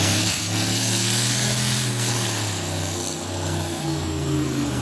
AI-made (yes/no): yes